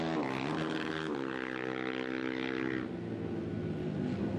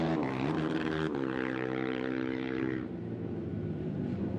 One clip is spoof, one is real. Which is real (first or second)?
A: first